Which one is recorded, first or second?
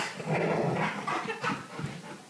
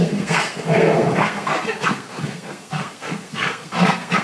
first